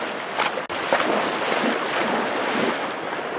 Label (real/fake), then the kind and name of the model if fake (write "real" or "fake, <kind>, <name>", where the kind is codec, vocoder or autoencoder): real